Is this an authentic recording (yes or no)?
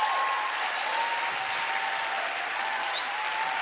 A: yes